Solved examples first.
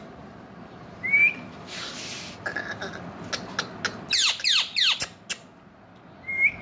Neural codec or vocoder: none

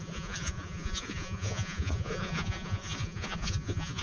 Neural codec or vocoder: vocoder, Vocos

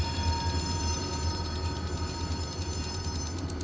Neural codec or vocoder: none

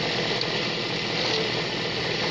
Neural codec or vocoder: none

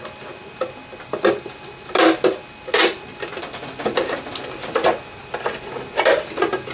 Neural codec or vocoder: none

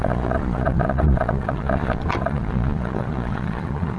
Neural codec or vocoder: vocoder, Vocos